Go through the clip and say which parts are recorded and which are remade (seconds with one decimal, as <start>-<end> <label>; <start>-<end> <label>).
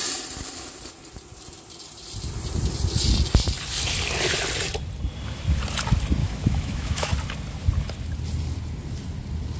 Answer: 0.0-6.2 recorded; 6.2-7.1 remade; 7.1-9.6 recorded